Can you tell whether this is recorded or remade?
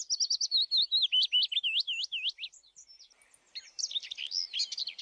recorded